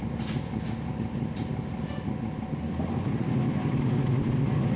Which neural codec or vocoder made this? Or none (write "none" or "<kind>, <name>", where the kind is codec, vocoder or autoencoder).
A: none